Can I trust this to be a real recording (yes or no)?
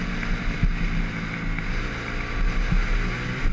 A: yes